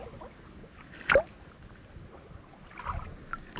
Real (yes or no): yes